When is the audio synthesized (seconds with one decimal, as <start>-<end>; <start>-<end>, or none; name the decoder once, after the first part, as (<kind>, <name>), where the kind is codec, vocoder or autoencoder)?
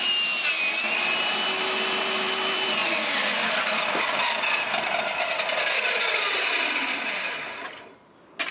none